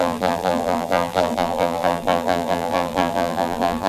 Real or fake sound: fake